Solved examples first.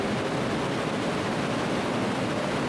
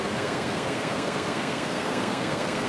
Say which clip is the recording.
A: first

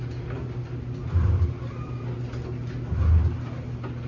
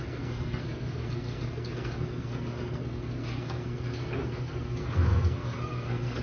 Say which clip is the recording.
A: first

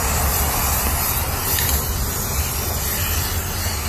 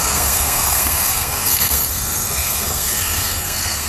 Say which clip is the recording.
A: first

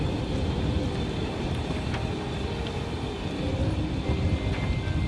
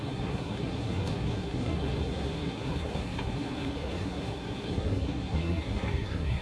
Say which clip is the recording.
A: first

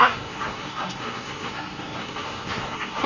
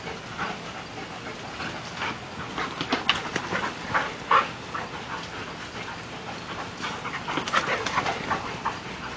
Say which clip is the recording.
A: second